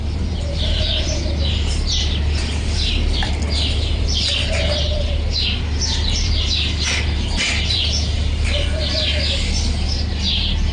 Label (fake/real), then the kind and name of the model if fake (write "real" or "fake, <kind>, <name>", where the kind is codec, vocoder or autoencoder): fake, vocoder, BigVGAN v2